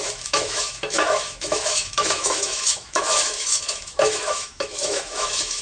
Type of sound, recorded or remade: remade